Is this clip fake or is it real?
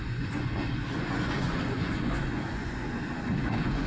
fake